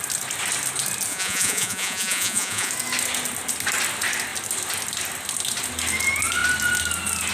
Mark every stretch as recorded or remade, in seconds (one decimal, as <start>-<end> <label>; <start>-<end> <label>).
0.0-1.1 recorded; 1.1-2.7 remade; 2.7-7.3 recorded